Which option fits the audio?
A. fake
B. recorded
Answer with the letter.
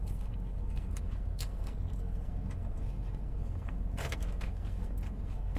A